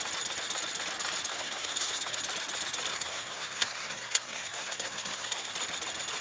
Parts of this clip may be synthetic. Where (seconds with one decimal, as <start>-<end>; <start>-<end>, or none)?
1.3-2.2; 2.9-5.5